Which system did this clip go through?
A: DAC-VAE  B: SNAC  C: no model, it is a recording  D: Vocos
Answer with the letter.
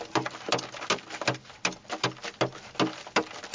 C